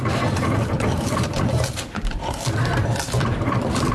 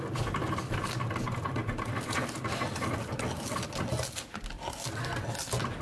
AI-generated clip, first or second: first